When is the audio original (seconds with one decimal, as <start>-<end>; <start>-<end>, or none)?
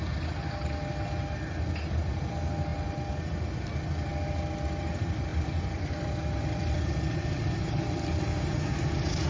0.0-5.3; 8.2-9.3